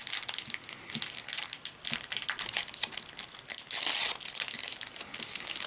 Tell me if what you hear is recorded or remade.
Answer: recorded